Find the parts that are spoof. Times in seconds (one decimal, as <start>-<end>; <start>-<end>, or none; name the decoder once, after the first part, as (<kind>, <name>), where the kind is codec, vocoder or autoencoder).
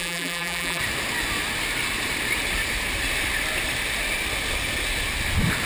0.0-0.8 (vocoder, BigVGAN v2)